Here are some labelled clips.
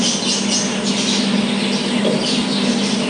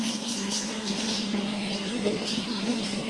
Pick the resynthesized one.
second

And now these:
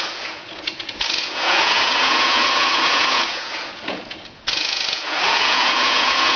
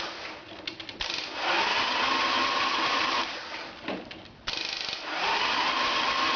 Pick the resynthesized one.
first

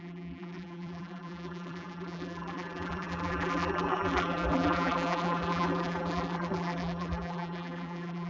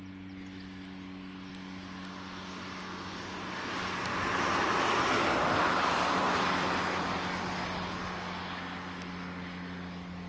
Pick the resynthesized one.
first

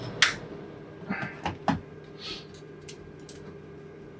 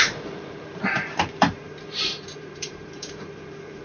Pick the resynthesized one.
second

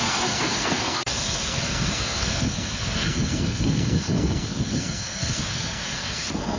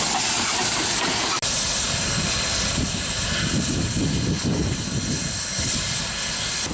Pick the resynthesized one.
first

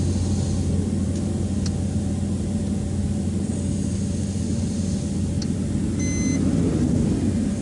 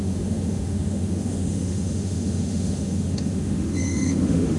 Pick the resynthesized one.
second